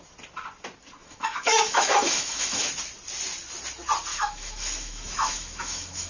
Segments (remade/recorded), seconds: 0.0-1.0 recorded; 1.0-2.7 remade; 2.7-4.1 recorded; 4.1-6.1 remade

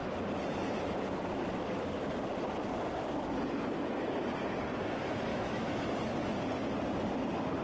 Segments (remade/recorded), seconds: 0.0-3.7 recorded; 3.7-4.2 remade; 4.2-5.3 recorded; 5.3-5.9 remade; 5.9-7.6 recorded

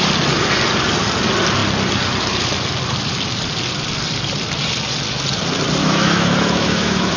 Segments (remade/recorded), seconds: 0.0-5.8 recorded; 5.8-7.2 remade

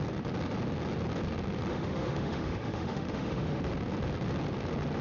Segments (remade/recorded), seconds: 0.0-1.7 recorded; 1.7-3.6 remade; 3.6-5.0 recorded

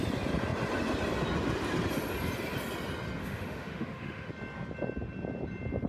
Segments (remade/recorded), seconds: 0.0-3.2 recorded; 3.2-4.3 remade; 4.3-5.9 recorded

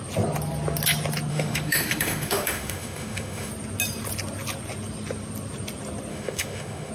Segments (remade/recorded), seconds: 0.0-1.3 recorded; 1.3-3.5 remade; 3.5-6.1 recorded; 6.1-6.9 remade